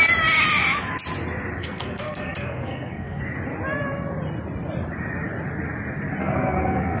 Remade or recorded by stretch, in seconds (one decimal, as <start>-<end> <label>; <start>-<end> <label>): 0.0-1.6 recorded; 1.6-3.2 remade; 3.2-6.2 recorded; 6.2-7.0 remade